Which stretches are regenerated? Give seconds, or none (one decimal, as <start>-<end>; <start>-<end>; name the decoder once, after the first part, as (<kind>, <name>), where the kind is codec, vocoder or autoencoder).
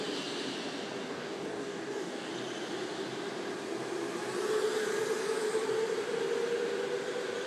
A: 1.1-2.3 (codec, DAC)